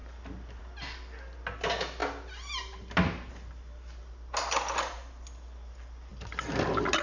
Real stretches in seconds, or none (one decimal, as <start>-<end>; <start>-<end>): 0.0-7.0